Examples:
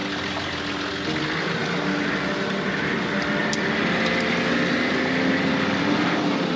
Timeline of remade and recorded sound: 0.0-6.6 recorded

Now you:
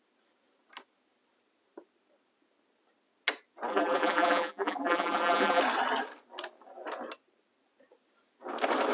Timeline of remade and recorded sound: 0.0-3.7 recorded; 3.7-5.6 remade; 5.6-8.9 recorded

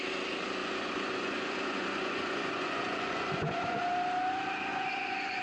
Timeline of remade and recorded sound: 0.0-0.6 recorded; 0.6-3.8 remade; 3.8-4.7 recorded; 4.7-5.4 remade

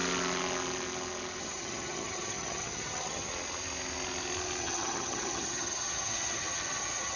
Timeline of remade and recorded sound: 0.0-1.4 recorded; 1.4-3.3 remade; 3.3-4.6 recorded; 4.6-7.2 remade

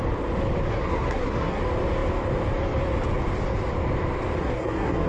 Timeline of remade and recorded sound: 0.0-0.7 recorded; 0.7-1.6 remade; 1.6-4.4 recorded; 4.4-5.1 remade